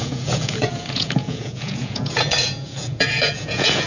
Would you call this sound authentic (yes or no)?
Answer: no